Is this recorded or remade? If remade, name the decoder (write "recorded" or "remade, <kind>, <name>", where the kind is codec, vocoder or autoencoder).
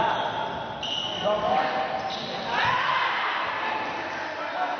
recorded